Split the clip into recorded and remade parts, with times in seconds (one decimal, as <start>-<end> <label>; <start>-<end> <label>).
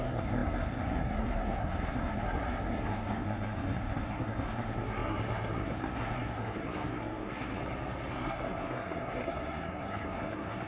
0.0-7.6 remade; 7.6-8.1 recorded; 8.1-10.7 remade